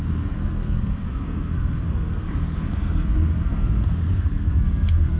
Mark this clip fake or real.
fake